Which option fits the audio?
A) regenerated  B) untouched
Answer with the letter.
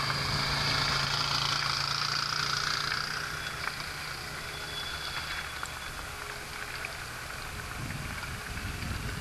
B